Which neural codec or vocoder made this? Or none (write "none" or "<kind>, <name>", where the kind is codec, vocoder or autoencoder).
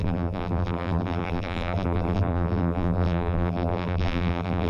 vocoder, BigVGAN v2